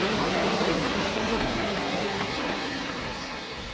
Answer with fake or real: fake